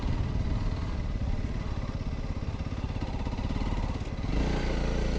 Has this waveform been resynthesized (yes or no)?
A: no